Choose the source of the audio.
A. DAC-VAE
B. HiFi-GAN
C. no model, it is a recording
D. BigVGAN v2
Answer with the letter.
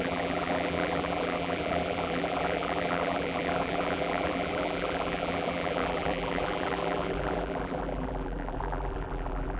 D